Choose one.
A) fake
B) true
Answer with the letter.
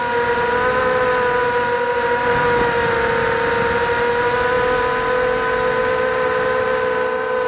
B